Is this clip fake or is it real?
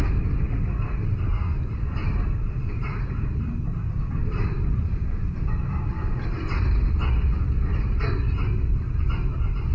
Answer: real